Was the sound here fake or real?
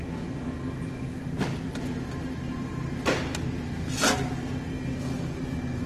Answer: real